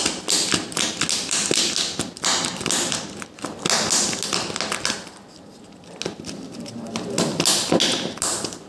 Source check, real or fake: real